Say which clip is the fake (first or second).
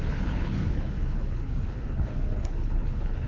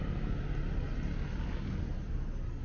first